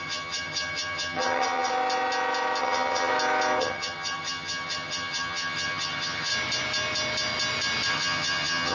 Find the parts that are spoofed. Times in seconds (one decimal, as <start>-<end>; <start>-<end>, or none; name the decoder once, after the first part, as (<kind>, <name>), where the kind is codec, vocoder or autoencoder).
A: 0.0-1.7 (vocoder, HiFi-GAN); 2.6-3.1; 3.6-6.3; 7.9-8.7